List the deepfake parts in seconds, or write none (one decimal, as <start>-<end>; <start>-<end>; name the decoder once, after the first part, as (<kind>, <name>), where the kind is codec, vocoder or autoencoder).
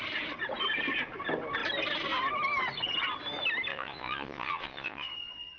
3.7-5.6 (vocoder, Vocos)